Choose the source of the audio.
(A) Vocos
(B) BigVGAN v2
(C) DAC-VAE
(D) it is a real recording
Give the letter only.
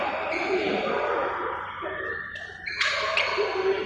B